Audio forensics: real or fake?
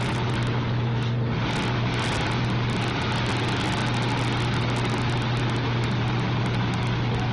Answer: real